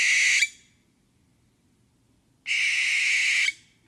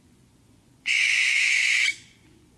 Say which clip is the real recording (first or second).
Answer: first